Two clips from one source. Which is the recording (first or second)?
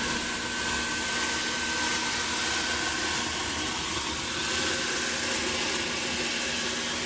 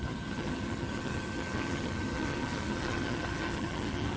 first